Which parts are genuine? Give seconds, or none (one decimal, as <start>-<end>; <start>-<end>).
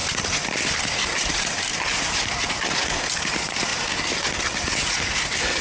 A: 0.0-1.7; 2.8-5.6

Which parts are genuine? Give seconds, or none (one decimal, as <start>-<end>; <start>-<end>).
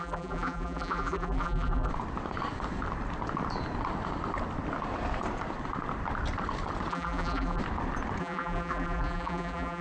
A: 1.9-6.9; 7.6-8.2